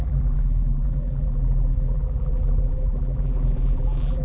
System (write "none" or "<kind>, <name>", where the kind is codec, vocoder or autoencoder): vocoder, BigVGAN v2